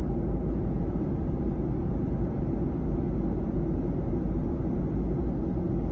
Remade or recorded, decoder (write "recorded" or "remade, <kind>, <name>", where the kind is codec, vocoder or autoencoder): recorded